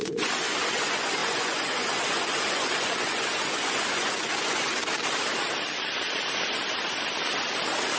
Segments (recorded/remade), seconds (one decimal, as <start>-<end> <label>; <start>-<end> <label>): 0.0-4.8 remade; 4.8-8.0 recorded